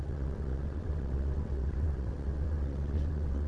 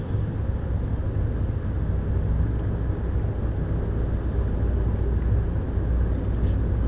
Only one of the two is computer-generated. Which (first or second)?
first